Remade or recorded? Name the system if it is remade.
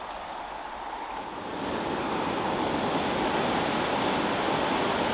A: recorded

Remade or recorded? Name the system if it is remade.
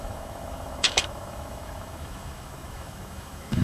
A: remade, autoencoder, DAC-VAE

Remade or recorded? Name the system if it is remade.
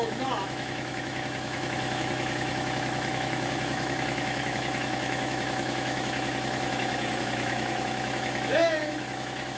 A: remade, autoencoder, DAC-VAE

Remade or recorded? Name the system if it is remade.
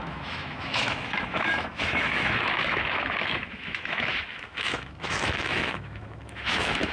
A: remade, autoencoder, DAC-VAE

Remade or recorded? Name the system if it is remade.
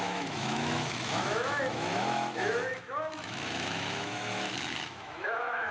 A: remade, autoencoder, DAC-VAE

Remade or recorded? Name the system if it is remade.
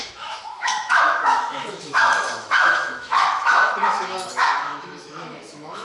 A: remade, autoencoder, DAC-VAE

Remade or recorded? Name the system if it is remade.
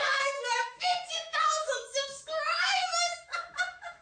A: remade, autoencoder, DAC-VAE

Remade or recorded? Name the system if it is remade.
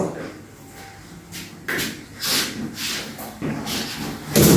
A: recorded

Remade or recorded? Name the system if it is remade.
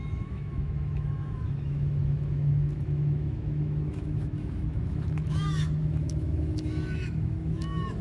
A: remade, autoencoder, DAC-VAE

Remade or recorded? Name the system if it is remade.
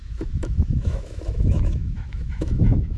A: remade, autoencoder, DAC-VAE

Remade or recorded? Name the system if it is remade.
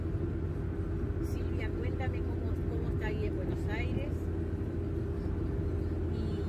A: recorded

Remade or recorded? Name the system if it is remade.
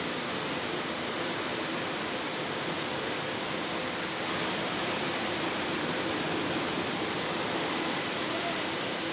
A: recorded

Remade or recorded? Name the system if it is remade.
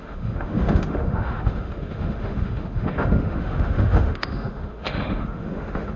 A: remade, autoencoder, DAC-VAE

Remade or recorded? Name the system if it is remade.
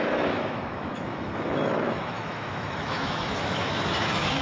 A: remade, autoencoder, DAC-VAE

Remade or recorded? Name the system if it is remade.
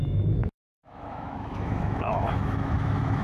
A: remade, autoencoder, DAC-VAE